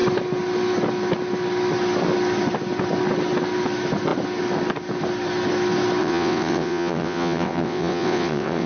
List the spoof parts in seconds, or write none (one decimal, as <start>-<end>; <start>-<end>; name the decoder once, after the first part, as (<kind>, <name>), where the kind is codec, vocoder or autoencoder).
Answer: 6.0-8.7 (vocoder, WaveNeXt)